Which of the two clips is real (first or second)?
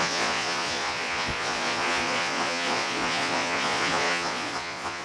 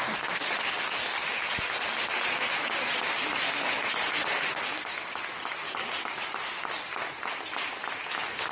second